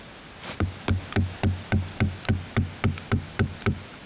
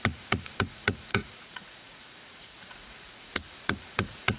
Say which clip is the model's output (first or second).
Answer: second